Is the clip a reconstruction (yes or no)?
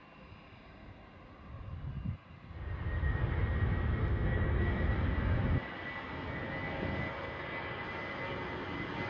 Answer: no